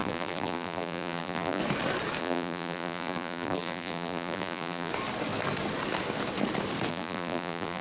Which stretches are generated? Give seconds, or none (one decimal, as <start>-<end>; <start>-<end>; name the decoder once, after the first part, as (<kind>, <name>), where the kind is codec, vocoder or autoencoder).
0.0-1.6 (vocoder, BigVGAN v2); 2.2-4.9; 6.9-7.8